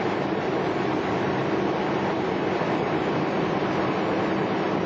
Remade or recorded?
recorded